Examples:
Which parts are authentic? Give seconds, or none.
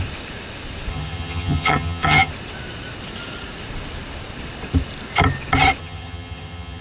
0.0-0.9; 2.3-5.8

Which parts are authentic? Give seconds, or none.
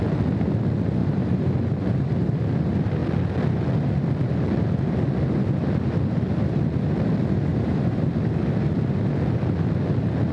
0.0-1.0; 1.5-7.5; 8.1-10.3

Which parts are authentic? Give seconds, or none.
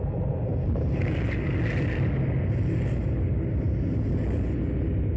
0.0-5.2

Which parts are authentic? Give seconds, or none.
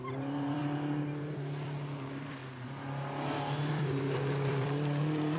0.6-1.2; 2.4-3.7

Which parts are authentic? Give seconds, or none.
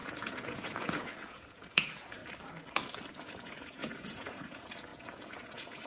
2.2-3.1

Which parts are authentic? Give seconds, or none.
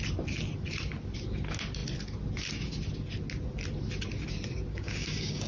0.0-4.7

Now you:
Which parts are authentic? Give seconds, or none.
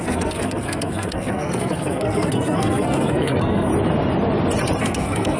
3.7-4.8